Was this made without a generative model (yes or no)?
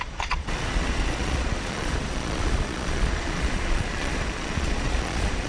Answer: no